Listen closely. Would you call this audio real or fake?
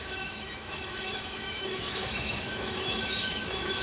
fake